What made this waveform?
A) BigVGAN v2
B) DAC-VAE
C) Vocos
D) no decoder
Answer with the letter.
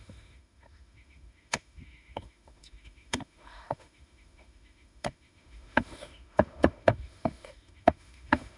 B